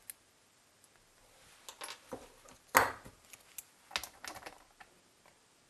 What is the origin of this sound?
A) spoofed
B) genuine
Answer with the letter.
B